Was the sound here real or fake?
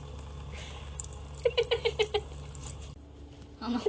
real